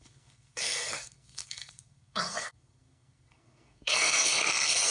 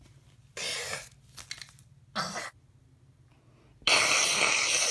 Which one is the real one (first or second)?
second